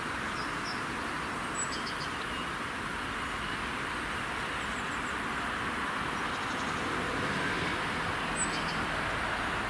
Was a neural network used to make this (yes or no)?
no